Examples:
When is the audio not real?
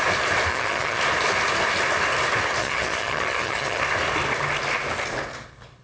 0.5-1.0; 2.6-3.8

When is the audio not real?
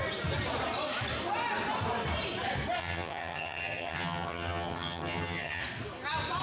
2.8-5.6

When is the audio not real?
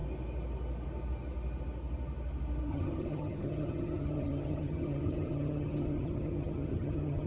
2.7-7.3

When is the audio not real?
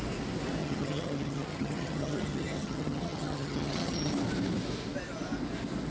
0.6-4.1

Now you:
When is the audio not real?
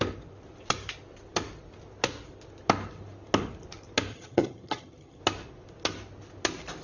4.1-5.2